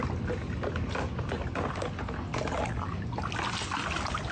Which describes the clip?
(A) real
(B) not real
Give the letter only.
A